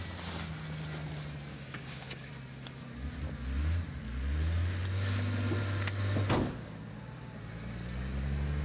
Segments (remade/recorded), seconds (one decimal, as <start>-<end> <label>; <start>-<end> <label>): 0.0-1.5 recorded; 1.5-2.3 remade; 2.3-8.6 recorded